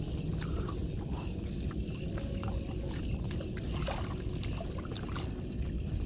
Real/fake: real